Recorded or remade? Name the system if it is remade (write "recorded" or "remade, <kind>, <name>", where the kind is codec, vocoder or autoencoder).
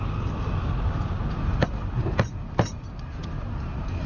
recorded